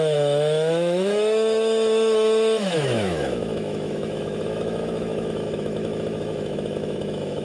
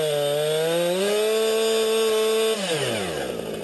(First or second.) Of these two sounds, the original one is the second